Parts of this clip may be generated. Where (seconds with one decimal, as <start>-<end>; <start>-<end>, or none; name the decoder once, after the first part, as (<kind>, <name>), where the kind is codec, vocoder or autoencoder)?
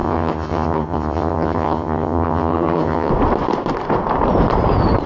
0.0-3.1 (vocoder, HiFi-GAN)